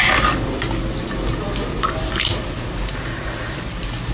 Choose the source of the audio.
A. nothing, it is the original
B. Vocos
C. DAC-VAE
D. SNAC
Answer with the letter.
A